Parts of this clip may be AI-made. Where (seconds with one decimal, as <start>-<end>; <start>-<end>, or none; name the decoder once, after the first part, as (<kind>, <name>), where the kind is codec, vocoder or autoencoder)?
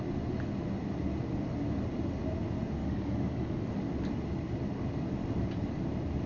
2.8-3.7 (codec, DAC)